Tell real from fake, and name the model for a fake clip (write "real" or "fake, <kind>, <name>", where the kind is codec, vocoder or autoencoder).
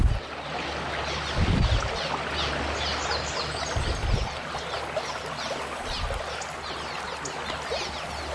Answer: real